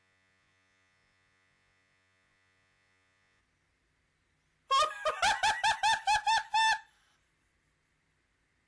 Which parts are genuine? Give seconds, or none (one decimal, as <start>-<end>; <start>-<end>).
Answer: 3.4-8.7